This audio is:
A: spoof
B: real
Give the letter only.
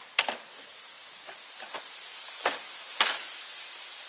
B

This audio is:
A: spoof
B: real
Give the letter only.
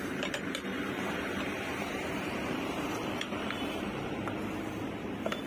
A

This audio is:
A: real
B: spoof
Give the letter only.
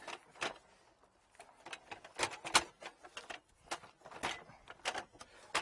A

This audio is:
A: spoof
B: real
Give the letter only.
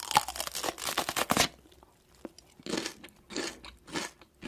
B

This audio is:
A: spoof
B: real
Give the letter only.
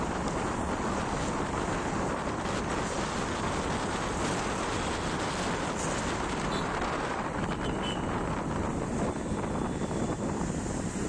B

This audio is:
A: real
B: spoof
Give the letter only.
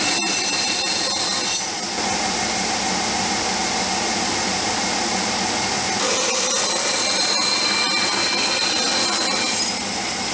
A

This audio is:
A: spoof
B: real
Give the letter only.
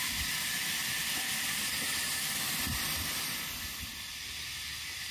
A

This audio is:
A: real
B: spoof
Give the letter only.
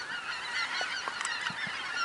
A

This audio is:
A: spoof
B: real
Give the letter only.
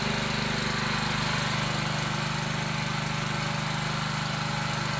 B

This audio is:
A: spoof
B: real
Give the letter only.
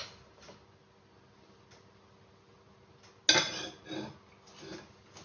B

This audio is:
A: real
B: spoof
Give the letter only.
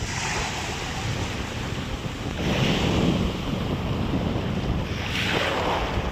A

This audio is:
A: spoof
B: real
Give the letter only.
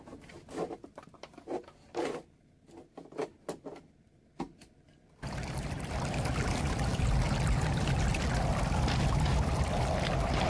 A